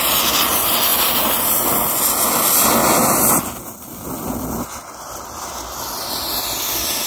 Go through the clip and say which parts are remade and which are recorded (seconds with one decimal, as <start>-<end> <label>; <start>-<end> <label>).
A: 0.0-7.1 recorded